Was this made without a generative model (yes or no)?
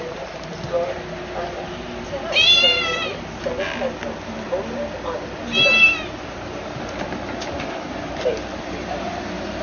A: yes